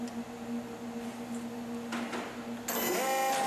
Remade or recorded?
recorded